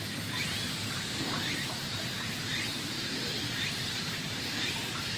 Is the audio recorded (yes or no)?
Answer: no